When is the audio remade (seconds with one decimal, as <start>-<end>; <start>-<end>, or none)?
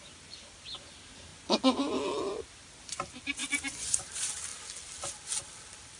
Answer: 1.3-1.9; 3.4-4.0